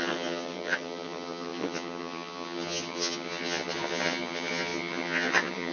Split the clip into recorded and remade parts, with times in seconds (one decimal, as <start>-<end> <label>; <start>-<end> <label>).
0.0-5.7 remade